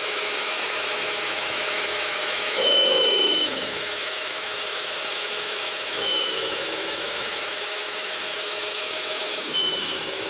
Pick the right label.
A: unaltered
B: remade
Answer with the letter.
B